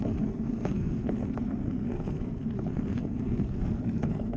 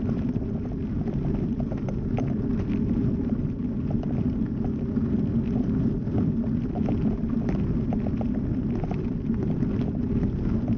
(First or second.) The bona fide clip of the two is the second